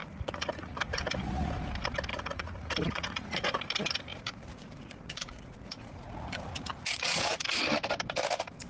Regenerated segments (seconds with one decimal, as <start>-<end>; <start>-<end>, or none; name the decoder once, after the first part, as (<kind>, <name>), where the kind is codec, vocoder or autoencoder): 0.0-1.5 (vocoder, Vocos); 2.1-3.6; 4.1-7.6

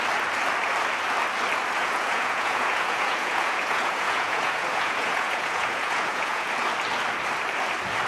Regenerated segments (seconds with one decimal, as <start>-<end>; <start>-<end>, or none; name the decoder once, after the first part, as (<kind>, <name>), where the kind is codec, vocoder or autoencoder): 1.8-6.5 (vocoder, Vocos)

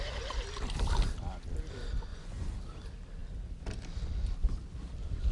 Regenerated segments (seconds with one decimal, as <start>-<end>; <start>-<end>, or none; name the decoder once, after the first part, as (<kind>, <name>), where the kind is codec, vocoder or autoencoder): 2.1-2.6 (vocoder, Vocos)

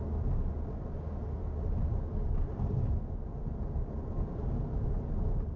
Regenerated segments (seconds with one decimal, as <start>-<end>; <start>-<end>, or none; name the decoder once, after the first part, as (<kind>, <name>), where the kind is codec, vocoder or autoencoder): none

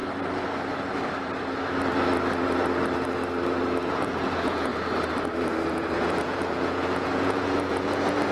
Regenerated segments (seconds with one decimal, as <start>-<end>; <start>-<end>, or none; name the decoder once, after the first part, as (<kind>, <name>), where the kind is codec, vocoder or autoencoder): 3.9-4.7 (vocoder, Vocos); 5.7-8.3